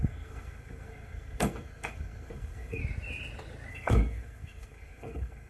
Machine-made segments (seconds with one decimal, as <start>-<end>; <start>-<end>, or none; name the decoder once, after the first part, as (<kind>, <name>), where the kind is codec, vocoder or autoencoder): 0.0-2.8 (codec, SNAC); 3.7-5.5